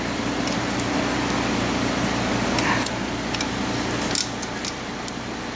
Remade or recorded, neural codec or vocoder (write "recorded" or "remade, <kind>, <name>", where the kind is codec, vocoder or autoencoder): recorded